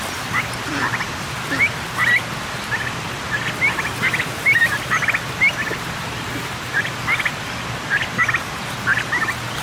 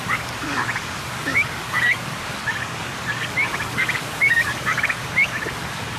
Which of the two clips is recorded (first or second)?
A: first